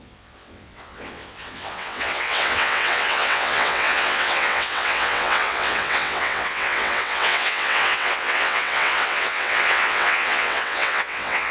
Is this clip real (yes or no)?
no